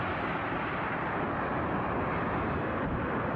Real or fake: real